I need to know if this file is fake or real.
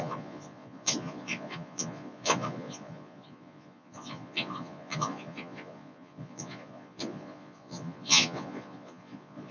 fake